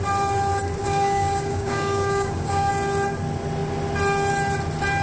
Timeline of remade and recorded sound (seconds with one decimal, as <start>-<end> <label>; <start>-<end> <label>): 0.0-0.8 recorded; 0.8-2.7 remade; 2.7-5.0 recorded